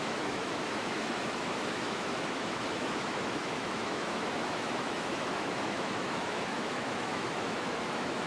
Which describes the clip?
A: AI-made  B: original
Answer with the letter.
A